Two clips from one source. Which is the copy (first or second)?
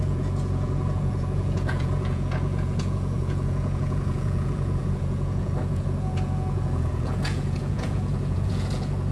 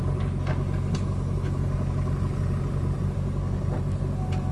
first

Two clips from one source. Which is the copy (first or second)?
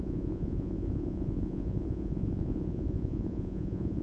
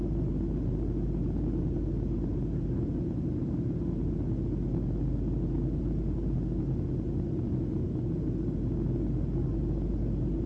first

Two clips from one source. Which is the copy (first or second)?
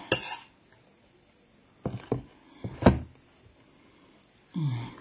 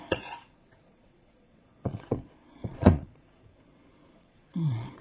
second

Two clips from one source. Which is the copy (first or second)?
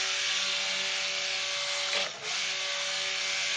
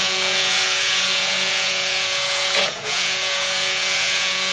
second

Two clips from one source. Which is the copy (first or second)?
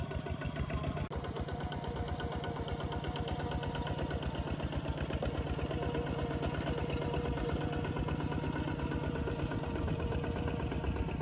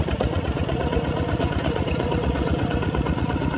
second